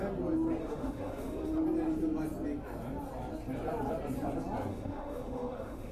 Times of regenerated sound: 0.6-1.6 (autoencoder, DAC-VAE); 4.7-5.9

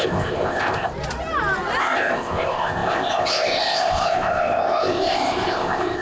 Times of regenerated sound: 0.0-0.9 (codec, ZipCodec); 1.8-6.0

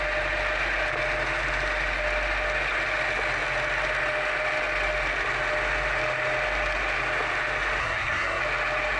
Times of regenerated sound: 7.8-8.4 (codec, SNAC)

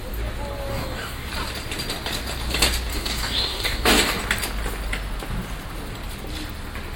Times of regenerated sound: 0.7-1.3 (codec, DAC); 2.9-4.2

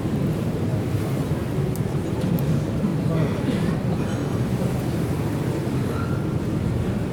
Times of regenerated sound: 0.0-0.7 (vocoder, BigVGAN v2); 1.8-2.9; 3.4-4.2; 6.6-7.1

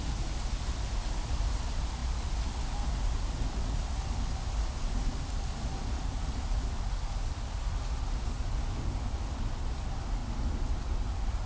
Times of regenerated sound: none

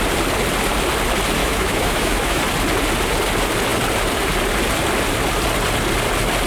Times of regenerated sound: 1.4-2.4 (autoencoder, DAC-VAE)